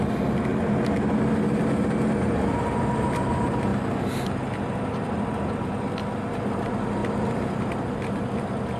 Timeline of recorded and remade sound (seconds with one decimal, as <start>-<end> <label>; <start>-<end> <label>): 0.0-8.8 recorded